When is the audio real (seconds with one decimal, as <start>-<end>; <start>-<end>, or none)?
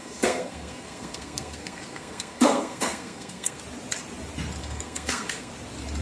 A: 3.6-4.6; 5.5-6.0